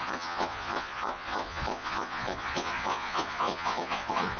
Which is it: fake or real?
fake